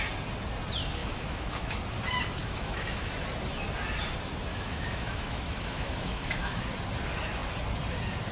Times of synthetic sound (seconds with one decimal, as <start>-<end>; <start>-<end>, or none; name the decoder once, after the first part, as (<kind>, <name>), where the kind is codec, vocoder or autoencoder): 1.0-1.8 (autoencoder, DAC-VAE); 2.4-3.1; 4.5-6.6